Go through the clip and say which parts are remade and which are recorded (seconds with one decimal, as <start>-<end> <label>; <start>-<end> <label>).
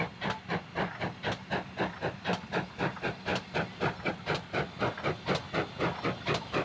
0.0-6.6 recorded